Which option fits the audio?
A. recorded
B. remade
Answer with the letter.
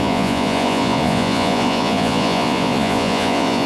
B